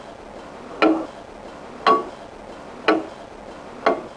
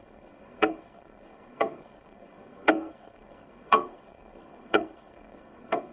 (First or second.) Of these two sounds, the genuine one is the first